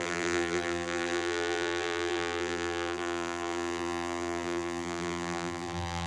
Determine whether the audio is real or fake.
fake